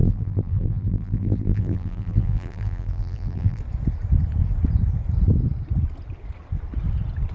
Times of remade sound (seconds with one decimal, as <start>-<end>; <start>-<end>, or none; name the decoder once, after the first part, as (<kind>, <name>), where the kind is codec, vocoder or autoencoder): 0.0-3.6 (vocoder, BigVGAN v2)